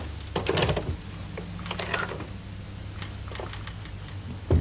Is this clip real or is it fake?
real